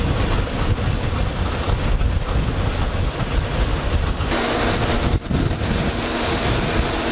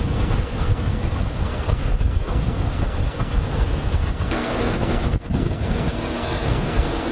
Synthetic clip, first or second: second